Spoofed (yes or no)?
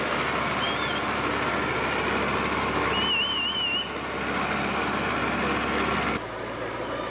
no